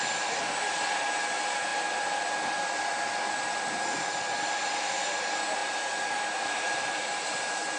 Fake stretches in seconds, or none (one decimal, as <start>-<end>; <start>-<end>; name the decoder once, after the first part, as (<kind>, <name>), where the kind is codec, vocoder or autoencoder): none